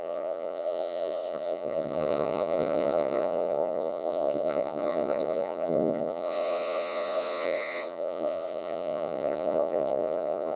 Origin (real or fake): fake